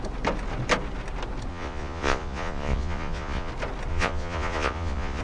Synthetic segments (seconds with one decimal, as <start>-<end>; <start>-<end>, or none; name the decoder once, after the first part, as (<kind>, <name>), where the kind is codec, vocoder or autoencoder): 1.5-3.5 (vocoder, Vocos); 3.9-5.2

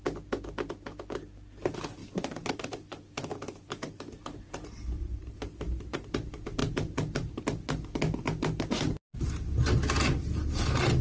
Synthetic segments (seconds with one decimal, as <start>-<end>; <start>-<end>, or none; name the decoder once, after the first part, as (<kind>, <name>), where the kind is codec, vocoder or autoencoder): 2.0-6.0 (vocoder, BigVGAN v2); 6.6-7.4

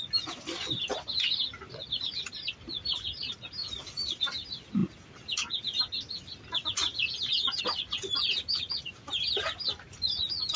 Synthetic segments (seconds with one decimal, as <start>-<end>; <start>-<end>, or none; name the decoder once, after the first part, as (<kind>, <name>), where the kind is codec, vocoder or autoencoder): none

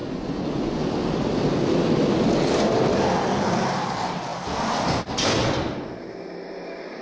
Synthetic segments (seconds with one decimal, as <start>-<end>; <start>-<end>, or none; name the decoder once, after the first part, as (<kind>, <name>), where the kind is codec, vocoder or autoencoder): 0.0-0.8 (vocoder, Vocos)

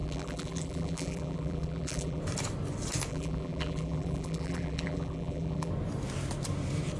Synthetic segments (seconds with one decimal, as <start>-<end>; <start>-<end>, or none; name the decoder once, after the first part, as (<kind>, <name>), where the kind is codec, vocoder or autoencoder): 0.0-2.2 (vocoder, BigVGAN v2); 3.1-5.7

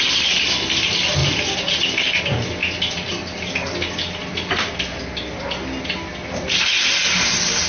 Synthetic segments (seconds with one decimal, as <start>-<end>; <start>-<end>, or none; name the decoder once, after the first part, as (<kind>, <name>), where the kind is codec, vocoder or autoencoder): 1.2-2.2 (vocoder, BigVGAN v2); 2.6-3.5

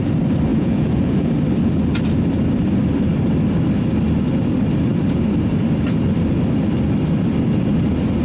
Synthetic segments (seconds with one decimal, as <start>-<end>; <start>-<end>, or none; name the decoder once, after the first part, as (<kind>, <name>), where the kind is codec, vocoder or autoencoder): 0.5-1.3 (vocoder, Vocos)